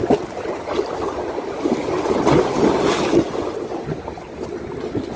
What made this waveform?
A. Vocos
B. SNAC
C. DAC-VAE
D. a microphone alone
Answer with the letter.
D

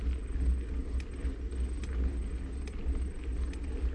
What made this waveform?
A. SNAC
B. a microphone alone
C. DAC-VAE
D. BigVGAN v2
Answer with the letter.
B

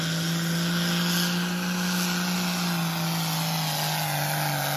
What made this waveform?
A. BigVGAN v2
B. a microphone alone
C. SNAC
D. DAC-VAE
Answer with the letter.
B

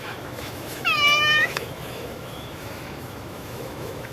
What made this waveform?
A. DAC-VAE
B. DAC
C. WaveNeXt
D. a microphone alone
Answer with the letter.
A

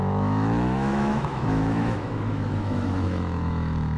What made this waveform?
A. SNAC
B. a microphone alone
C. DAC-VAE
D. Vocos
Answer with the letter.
C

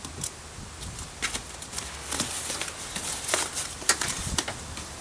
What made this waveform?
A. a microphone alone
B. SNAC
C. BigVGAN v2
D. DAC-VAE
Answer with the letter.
A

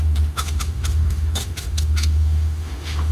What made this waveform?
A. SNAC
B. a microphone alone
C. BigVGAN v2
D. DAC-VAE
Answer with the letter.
D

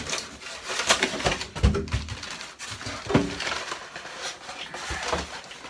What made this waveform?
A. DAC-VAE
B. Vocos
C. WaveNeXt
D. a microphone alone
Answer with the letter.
D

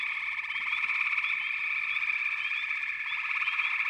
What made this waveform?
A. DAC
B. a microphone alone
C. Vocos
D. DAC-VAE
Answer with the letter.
B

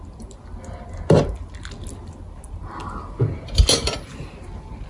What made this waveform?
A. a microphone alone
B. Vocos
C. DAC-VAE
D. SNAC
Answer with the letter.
A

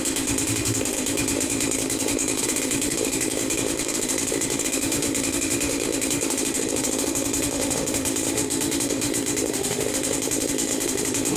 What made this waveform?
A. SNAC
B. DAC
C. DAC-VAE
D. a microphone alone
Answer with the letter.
C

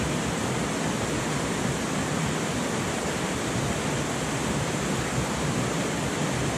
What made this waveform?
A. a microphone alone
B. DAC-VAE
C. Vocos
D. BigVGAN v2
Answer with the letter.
A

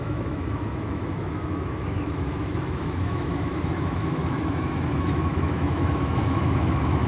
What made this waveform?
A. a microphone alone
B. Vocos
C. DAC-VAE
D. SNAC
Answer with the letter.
C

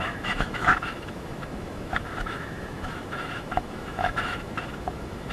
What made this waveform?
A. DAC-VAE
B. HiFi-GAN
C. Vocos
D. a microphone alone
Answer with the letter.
A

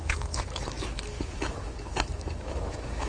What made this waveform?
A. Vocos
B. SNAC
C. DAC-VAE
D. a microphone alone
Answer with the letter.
C